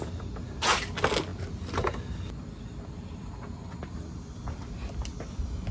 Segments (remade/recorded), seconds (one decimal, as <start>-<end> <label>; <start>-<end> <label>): 0.0-5.7 recorded